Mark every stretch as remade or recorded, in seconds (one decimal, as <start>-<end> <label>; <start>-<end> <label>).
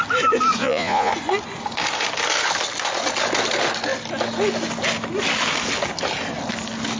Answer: 0.0-0.6 recorded; 0.6-1.1 remade; 1.1-7.0 recorded